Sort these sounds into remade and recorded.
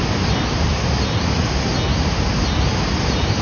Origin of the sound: recorded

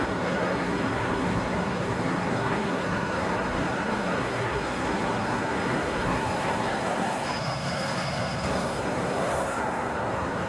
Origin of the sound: remade